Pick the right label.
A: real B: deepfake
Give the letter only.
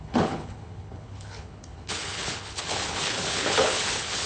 B